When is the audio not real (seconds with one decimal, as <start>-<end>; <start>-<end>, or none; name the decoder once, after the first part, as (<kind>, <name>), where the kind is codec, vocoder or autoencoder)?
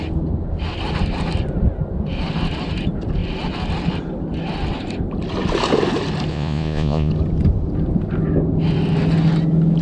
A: 6.3-7.1 (vocoder, Vocos)